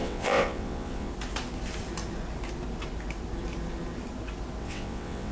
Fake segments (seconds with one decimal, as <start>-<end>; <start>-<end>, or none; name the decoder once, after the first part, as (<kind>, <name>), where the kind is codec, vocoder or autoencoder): 0.0-1.1 (vocoder, WaveNeXt); 4.6-5.3